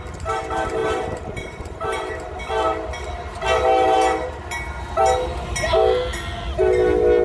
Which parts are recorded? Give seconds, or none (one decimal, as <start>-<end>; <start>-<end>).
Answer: 0.0-0.8; 2.4-7.2